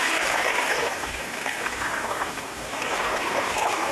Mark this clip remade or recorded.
remade